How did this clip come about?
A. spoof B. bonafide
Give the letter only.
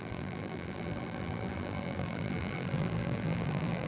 A